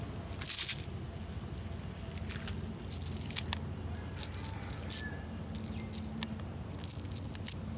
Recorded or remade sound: recorded